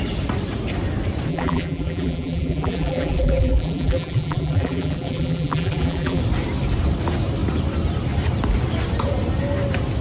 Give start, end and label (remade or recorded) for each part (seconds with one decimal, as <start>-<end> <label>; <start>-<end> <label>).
0.0-1.3 recorded; 1.3-6.2 remade; 6.2-10.0 recorded